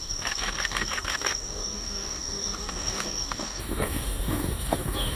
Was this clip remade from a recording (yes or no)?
yes